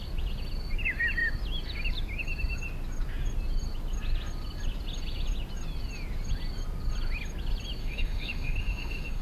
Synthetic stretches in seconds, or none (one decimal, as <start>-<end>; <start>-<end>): 7.8-9.2